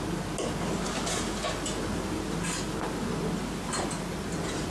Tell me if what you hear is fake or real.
real